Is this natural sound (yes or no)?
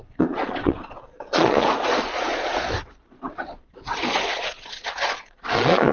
no